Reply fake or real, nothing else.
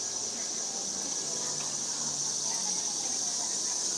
real